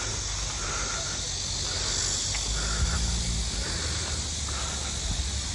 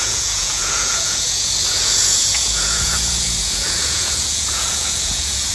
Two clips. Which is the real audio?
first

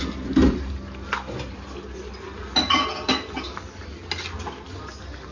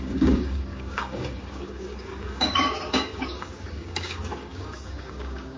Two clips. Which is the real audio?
first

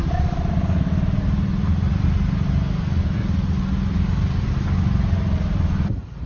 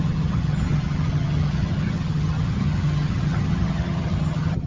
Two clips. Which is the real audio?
first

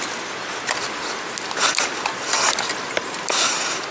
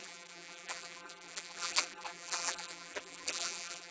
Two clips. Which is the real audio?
first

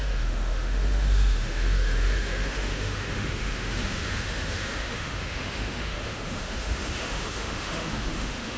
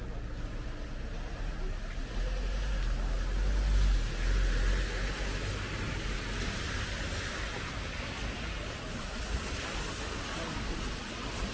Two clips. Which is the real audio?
second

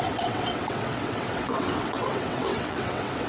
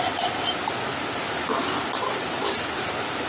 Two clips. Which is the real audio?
second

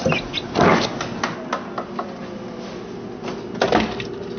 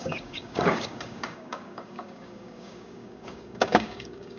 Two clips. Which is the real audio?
first